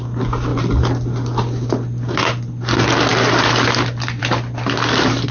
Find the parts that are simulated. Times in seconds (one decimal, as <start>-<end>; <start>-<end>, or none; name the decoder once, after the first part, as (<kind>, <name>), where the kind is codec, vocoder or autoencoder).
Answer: none